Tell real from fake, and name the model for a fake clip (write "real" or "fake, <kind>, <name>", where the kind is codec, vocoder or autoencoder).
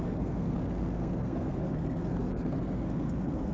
fake, codec, SNAC